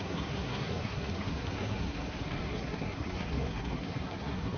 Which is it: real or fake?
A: fake